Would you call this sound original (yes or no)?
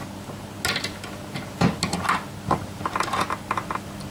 yes